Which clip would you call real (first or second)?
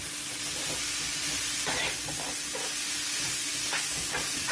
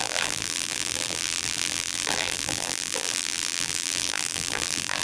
first